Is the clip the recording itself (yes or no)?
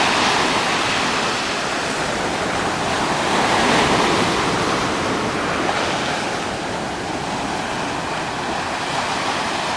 yes